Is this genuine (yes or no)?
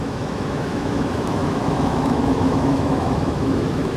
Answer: no